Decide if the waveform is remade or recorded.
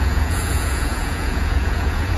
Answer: remade